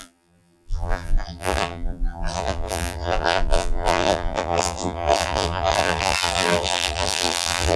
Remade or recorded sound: remade